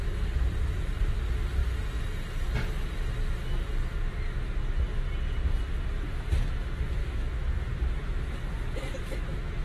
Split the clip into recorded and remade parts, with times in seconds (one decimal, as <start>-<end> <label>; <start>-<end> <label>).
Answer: 0.0-7.0 recorded; 7.0-7.6 remade; 7.6-9.6 recorded